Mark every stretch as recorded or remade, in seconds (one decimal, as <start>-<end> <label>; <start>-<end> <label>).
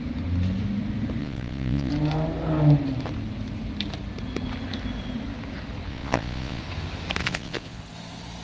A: 0.0-1.2 recorded; 1.2-1.9 remade; 1.9-5.9 recorded; 5.9-6.6 remade; 6.6-7.2 recorded; 7.2-7.8 remade; 7.8-8.4 recorded